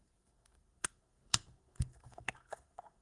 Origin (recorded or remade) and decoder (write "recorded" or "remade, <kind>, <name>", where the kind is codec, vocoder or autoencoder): remade, codec, SNAC